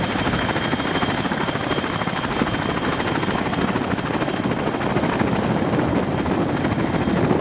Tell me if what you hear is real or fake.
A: real